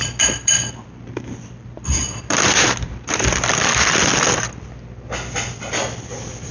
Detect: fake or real fake